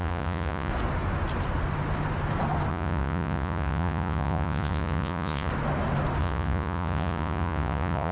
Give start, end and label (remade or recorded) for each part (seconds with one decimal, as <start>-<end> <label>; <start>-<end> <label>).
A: 0.0-0.7 remade; 0.7-2.7 recorded; 2.7-5.5 remade; 5.5-6.2 recorded; 6.2-8.1 remade